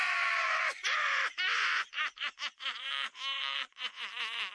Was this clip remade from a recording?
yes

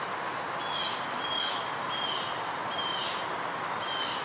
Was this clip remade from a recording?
no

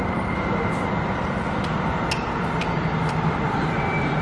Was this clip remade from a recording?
no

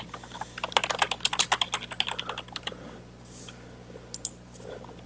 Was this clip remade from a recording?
no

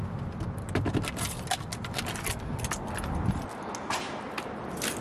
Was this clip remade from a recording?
no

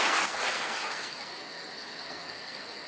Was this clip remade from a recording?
yes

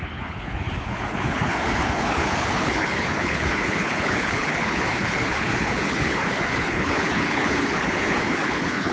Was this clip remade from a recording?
yes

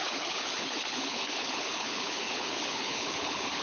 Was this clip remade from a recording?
yes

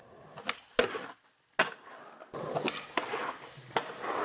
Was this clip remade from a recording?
no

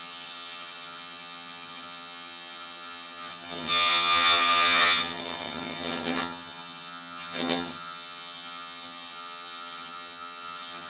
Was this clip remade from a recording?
yes